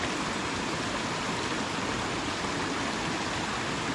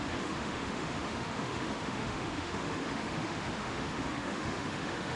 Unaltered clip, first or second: first